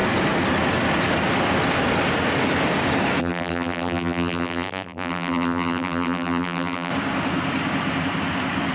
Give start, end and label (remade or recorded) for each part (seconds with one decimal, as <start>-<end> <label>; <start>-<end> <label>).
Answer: 0.0-3.2 recorded; 3.2-6.9 remade; 6.9-8.7 recorded